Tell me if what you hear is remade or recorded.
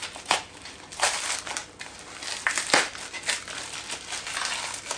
recorded